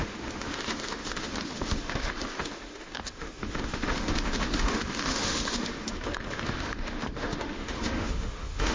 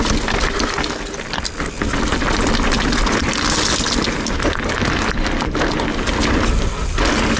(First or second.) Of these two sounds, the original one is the second